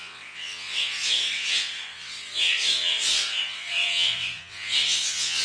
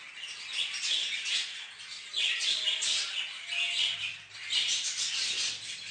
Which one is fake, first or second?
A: first